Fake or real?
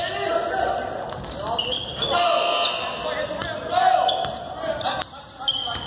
real